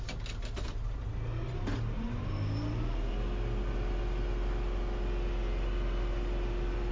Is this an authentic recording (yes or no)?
yes